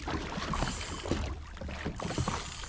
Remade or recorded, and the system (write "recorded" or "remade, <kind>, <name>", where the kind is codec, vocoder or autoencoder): recorded